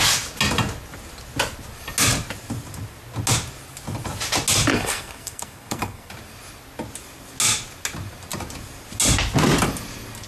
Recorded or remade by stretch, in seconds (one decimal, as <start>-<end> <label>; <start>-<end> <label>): 0.0-4.7 recorded; 4.7-6.1 remade; 6.1-10.3 recorded